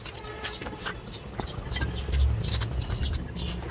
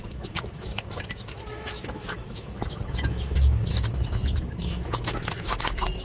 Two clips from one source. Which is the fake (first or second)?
second